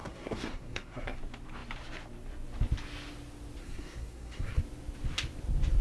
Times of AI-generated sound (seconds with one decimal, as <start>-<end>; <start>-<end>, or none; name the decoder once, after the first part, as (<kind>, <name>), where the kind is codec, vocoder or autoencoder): 0.0-1.2 (codec, SNAC); 3.6-4.6

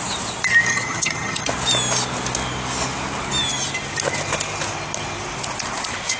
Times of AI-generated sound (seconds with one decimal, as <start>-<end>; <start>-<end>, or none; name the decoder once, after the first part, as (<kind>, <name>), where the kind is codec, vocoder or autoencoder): 0.7-1.5 (vocoder, HiFi-GAN)

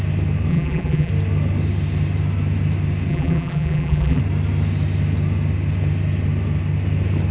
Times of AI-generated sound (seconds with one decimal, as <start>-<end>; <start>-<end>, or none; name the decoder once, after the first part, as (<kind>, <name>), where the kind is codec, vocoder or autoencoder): 0.5-1.1 (vocoder, BigVGAN v2); 3.1-4.2

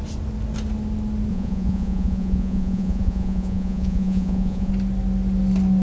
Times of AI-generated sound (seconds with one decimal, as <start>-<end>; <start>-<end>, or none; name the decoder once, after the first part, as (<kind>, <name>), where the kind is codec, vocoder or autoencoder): 1.3-4.7 (vocoder, Vocos)